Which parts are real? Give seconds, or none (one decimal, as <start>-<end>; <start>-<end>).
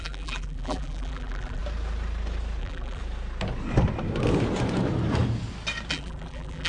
1.6-2.6; 3.0-5.9